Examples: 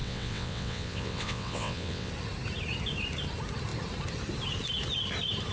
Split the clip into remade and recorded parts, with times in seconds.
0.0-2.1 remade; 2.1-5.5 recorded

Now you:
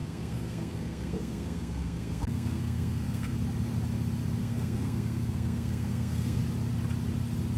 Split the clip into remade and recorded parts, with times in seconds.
0.0-3.3 remade; 3.3-4.4 recorded; 4.4-6.4 remade; 6.4-7.6 recorded

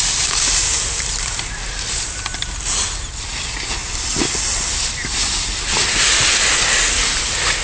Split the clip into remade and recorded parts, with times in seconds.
0.0-7.6 recorded

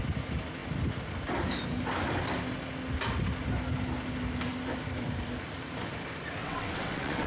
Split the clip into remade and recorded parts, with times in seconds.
0.0-6.4 recorded; 6.4-7.3 remade